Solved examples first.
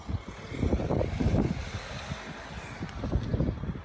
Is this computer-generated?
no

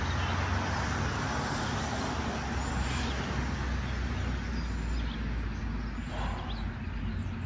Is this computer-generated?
no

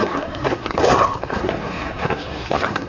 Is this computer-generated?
yes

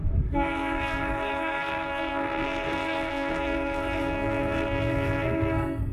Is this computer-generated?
yes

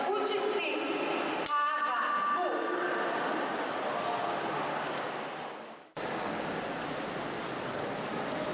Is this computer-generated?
no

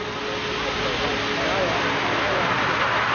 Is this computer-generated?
no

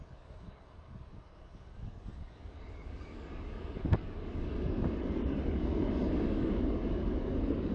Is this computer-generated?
yes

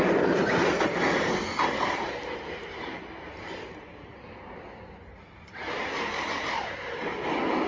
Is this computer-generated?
no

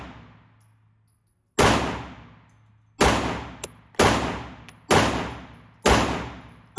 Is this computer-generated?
no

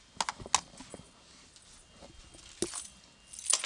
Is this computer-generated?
no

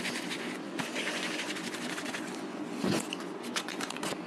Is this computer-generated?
yes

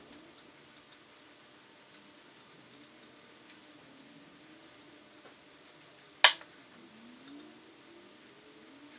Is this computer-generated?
no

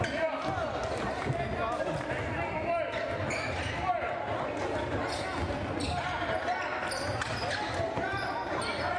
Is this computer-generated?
no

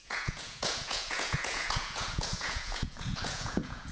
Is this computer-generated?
yes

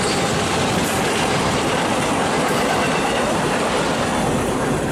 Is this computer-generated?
no